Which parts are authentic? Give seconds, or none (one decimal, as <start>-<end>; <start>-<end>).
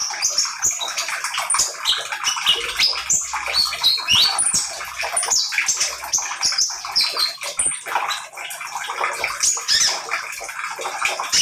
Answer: 0.0-11.4